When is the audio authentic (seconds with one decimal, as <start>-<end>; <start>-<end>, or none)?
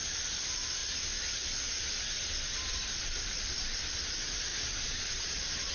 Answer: 0.8-3.0; 4.5-5.0